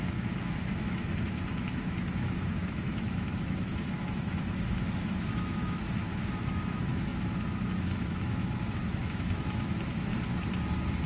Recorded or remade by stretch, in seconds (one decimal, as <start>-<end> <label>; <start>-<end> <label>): 0.0-10.1 remade; 10.1-11.1 recorded